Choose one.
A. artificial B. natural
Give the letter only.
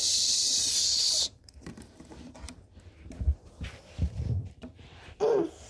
A